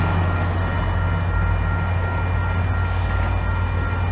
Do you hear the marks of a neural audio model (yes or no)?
no